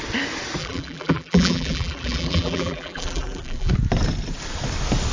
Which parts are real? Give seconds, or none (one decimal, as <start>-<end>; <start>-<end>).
0.0-0.6; 3.7-5.1